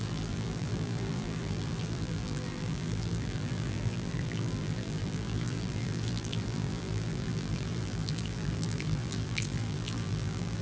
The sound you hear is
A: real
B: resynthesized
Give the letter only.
B